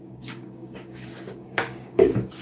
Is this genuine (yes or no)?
no